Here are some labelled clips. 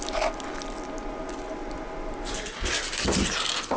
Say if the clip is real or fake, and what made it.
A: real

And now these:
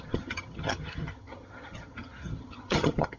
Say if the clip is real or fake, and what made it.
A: fake, vocoder, HiFi-GAN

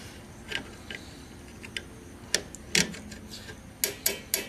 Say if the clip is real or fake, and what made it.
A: real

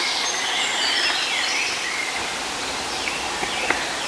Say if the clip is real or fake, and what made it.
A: real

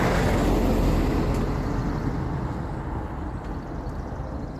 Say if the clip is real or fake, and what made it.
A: real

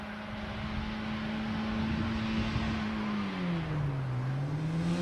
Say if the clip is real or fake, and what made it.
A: real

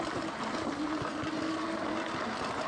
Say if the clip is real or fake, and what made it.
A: real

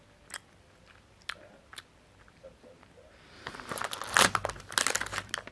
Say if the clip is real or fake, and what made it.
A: real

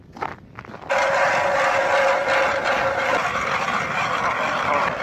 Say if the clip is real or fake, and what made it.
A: real